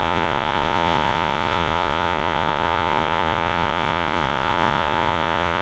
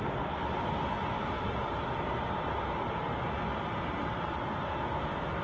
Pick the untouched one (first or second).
second